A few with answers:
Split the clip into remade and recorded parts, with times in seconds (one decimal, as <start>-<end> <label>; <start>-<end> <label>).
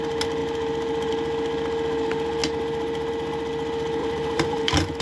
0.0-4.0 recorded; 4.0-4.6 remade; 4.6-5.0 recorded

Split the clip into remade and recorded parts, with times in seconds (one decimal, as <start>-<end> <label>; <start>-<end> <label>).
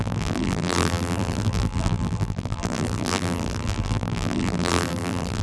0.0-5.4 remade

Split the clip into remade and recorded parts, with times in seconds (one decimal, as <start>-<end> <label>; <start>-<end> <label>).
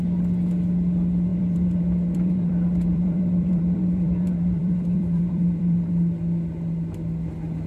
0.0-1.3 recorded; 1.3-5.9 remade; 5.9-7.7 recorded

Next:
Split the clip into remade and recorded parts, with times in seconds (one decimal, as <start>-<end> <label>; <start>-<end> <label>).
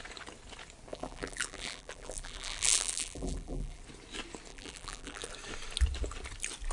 0.0-0.9 recorded; 0.9-3.8 remade; 3.8-4.5 recorded; 4.5-5.3 remade; 5.3-6.7 recorded